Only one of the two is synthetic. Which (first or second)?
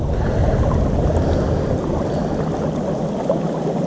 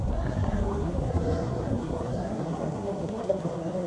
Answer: second